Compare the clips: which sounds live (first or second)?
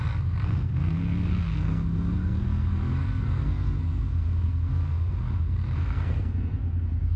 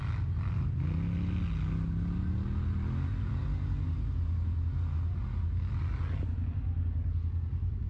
second